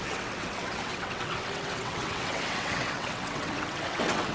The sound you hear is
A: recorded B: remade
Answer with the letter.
B